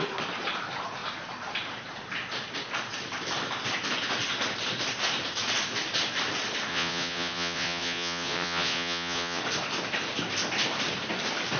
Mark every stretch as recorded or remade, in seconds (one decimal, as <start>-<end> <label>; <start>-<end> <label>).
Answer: 0.0-6.7 recorded; 6.7-9.4 remade; 9.4-11.6 recorded